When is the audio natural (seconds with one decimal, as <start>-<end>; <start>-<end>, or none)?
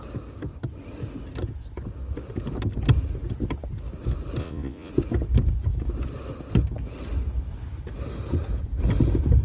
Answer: 0.0-4.4; 4.9-9.4